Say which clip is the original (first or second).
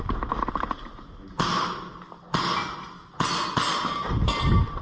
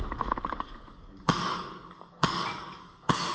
first